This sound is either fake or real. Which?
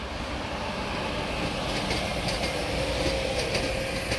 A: real